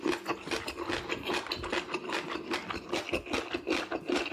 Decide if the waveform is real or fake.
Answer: real